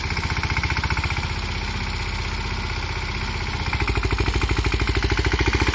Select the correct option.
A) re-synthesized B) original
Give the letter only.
B